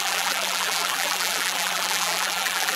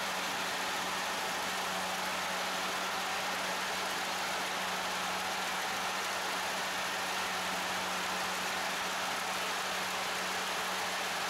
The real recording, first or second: second